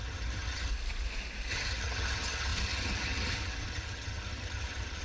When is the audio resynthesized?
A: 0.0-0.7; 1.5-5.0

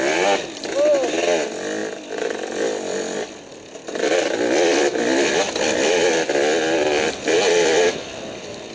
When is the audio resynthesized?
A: none

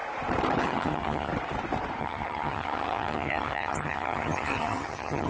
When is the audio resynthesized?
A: 0.6-1.3; 2.0-5.3

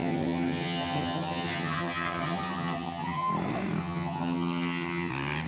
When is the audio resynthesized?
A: 0.0-3.3; 3.8-5.1

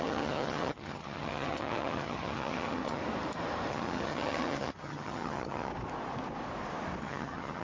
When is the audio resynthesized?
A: 0.0-3.0; 3.7-5.7; 7.0-7.6

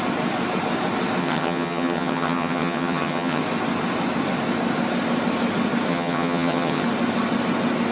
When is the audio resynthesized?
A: 1.2-3.4; 5.9-6.8

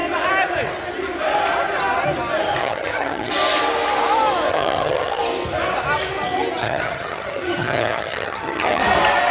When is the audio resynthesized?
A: 2.6-3.3; 4.5-5.2; 6.6-8.8

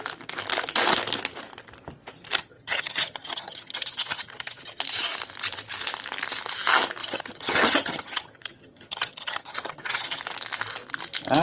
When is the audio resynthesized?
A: 2.4-4.8; 7.0-10.2